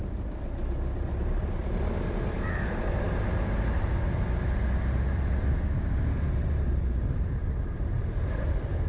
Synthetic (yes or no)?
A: no